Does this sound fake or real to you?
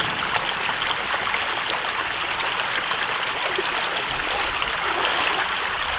real